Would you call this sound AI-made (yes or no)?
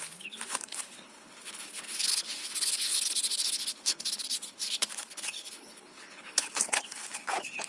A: yes